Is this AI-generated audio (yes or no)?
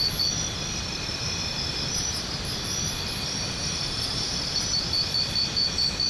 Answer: no